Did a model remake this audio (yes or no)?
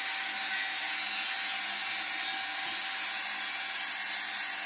no